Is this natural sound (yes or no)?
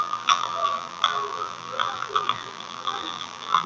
no